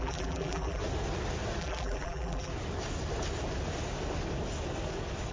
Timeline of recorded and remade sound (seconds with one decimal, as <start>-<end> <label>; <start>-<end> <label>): 0.0-0.8 remade; 0.8-1.6 recorded; 1.6-2.5 remade; 2.5-5.3 recorded